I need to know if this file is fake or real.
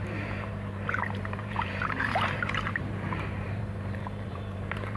fake